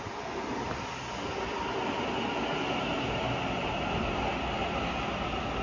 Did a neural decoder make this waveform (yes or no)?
no